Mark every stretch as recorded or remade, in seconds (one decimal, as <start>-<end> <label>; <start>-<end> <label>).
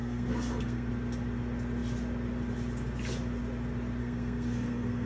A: 0.0-0.9 remade; 0.9-4.0 recorded; 4.0-5.1 remade